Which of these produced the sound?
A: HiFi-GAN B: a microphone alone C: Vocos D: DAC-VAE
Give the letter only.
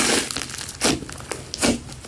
B